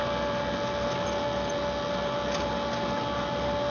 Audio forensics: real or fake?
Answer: real